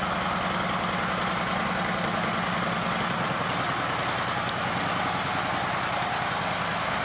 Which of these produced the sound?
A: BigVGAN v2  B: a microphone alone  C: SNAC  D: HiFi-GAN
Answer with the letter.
B